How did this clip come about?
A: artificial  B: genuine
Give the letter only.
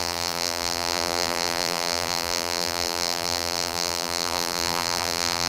A